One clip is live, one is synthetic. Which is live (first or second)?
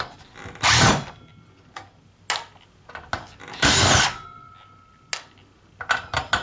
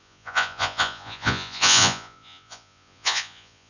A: first